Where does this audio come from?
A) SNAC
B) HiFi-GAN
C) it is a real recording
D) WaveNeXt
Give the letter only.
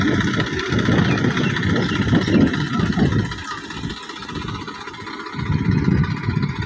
C